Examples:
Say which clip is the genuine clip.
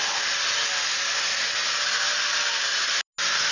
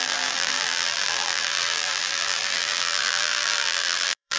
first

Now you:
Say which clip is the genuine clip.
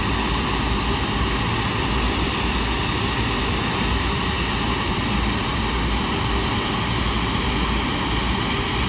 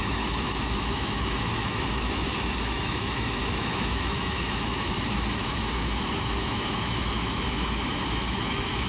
first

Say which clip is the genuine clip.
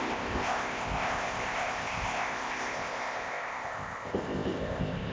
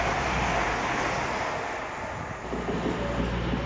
second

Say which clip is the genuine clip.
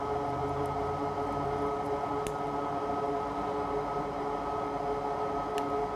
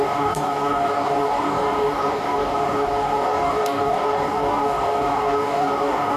first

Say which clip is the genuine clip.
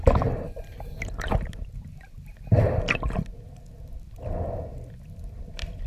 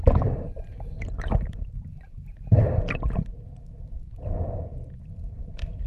first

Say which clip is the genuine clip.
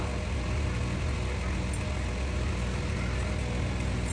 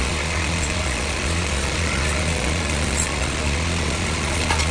first